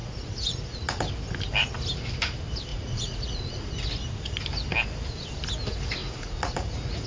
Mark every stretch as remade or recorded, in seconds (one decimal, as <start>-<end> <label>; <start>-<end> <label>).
0.0-0.8 remade; 0.8-2.7 recorded; 2.7-3.7 remade; 3.7-6.0 recorded; 6.0-7.1 remade

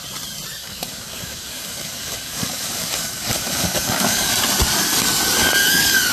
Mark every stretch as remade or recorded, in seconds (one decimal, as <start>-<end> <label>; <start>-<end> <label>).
0.0-0.6 recorded; 0.6-4.3 remade; 4.3-5.6 recorded; 5.6-6.1 remade

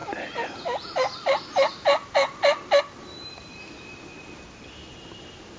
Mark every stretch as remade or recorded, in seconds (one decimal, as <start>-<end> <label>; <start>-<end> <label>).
0.0-5.6 recorded

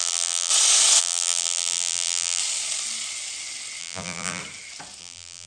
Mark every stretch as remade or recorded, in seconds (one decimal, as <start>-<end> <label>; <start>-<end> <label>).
0.0-0.5 remade; 0.5-1.0 recorded; 1.0-2.4 remade; 2.4-3.8 recorded; 3.8-4.4 remade; 4.4-5.0 recorded; 5.0-5.5 remade

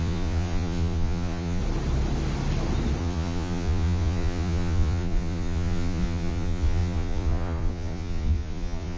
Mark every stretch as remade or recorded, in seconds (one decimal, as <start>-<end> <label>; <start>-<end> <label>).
0.0-1.6 remade; 1.6-3.0 recorded; 3.0-9.0 remade

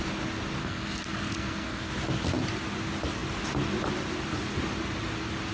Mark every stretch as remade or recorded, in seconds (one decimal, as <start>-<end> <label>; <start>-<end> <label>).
0.0-0.6 recorded; 0.6-1.9 remade; 1.9-5.5 recorded

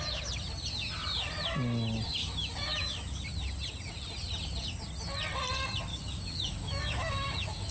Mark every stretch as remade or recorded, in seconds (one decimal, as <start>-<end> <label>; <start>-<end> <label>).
0.0-2.2 recorded; 2.2-3.2 remade; 3.2-5.9 recorded; 5.9-7.7 remade

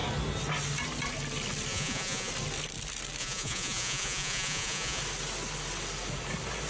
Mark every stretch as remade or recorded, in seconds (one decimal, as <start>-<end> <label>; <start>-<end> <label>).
0.0-1.7 recorded; 1.7-2.3 remade; 2.3-3.2 recorded; 3.2-5.0 remade; 5.0-6.7 recorded